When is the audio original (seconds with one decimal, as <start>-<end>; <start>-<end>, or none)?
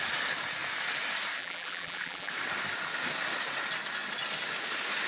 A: 0.0-1.4; 2.3-5.1